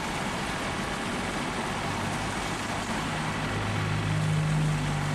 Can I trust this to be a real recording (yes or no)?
yes